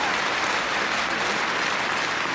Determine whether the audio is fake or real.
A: real